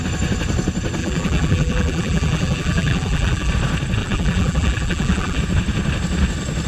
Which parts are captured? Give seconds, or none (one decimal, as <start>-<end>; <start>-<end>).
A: 0.0-1.0; 3.5-4.0; 5.4-6.7